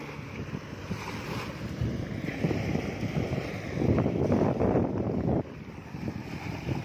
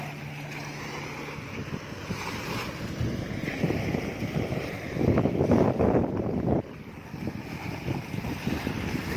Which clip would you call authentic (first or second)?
second